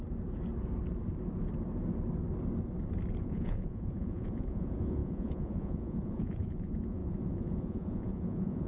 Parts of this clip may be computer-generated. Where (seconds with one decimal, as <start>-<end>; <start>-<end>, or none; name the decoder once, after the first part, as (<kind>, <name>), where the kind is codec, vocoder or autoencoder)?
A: 3.2-8.7 (vocoder, Vocos)